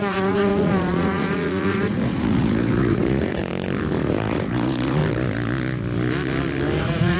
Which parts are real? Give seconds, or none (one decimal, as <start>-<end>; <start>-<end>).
3.5-4.0; 5.0-6.8